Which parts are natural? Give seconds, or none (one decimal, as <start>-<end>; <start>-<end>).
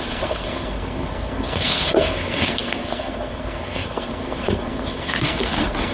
none